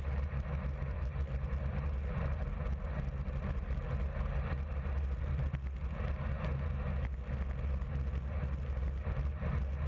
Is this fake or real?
real